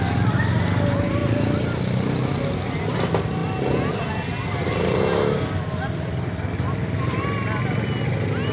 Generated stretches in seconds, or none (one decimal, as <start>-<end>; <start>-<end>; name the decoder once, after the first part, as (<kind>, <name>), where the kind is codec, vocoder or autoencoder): none